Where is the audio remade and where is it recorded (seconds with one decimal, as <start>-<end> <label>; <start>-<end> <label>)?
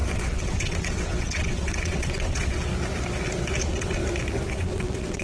0.0-2.7 remade; 2.7-3.6 recorded; 3.6-4.0 remade; 4.0-4.5 recorded; 4.5-5.2 remade